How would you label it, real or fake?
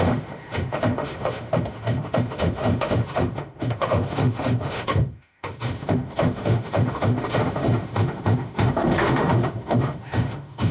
fake